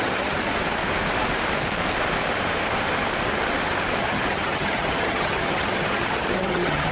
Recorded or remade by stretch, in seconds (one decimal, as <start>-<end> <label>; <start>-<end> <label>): 0.0-0.5 remade; 0.5-4.0 recorded; 4.0-6.9 remade